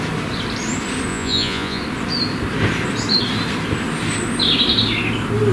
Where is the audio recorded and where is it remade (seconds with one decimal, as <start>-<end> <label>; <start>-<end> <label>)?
0.0-1.1 recorded; 1.1-1.8 remade; 1.8-5.5 recorded